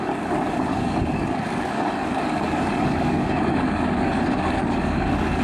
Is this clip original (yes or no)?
no